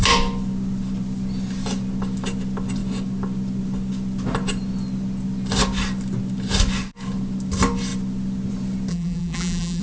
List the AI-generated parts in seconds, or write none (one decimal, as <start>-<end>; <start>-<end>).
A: 8.9-9.8